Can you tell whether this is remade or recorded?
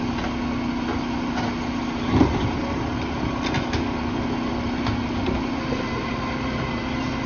recorded